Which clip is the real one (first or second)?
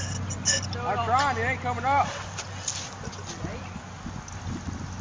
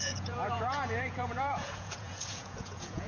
first